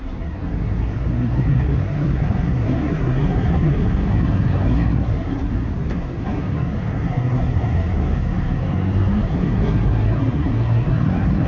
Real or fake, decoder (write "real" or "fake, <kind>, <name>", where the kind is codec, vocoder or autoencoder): fake, codec, SNAC